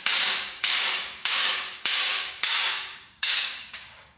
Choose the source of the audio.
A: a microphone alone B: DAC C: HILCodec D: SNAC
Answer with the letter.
B